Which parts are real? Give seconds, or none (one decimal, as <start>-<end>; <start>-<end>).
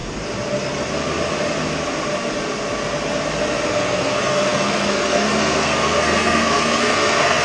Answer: 0.0-3.8